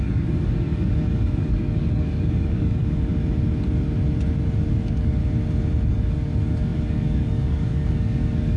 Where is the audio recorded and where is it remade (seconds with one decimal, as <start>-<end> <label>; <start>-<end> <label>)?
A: 0.0-3.1 remade; 3.1-4.7 recorded; 4.7-5.2 remade; 5.2-5.9 recorded; 5.9-8.6 remade